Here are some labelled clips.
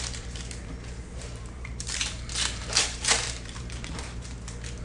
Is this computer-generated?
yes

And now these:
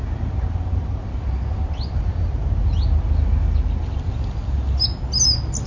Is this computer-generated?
no